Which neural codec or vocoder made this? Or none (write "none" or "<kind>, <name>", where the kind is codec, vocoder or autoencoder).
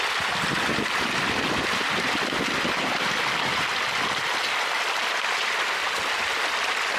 none